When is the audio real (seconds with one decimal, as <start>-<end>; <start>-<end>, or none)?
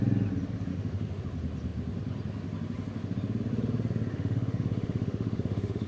0.0-0.7; 1.2-4.1